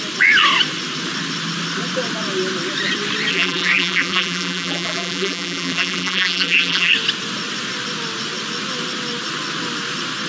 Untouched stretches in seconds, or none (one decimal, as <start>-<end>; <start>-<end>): 0.0-3.3; 6.9-10.3